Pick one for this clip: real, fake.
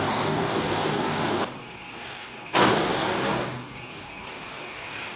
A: fake